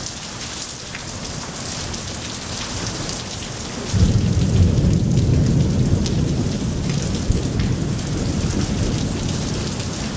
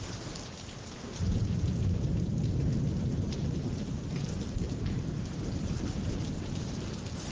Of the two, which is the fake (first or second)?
second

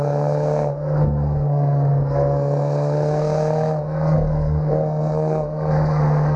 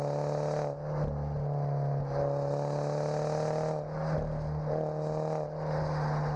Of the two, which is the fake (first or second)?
first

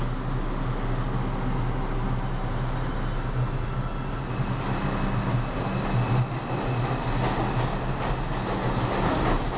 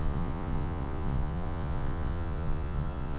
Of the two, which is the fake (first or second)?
second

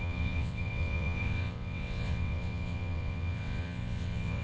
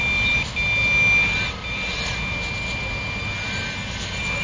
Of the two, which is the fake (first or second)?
first